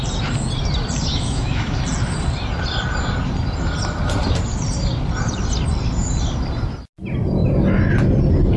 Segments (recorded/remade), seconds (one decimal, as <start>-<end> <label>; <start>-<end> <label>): 0.0-1.1 recorded; 1.1-1.8 remade; 1.8-8.6 recorded